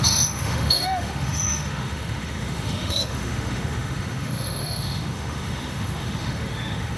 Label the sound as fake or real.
fake